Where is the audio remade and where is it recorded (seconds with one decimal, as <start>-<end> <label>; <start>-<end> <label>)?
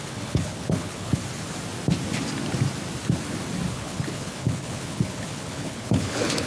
0.0-1.2 remade; 1.2-3.7 recorded; 3.7-6.5 remade